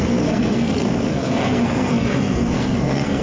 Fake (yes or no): yes